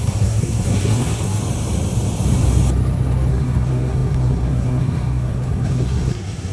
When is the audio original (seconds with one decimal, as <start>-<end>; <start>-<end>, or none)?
1.4-3.3